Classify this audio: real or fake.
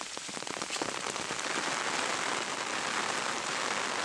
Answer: real